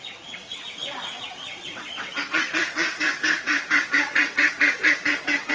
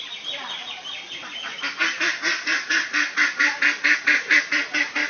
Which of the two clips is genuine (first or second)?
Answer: second